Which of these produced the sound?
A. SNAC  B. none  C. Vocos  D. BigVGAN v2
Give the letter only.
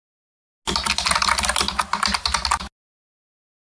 B